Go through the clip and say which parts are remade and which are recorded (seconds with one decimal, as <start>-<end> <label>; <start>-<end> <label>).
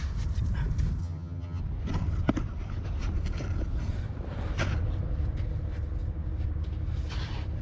0.0-1.0 recorded; 1.0-1.6 remade; 1.6-7.6 recorded